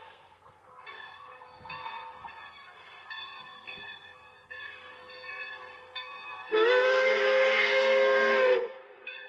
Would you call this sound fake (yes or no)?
yes